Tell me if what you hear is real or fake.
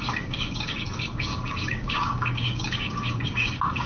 fake